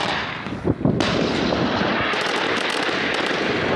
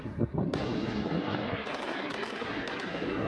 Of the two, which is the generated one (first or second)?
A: second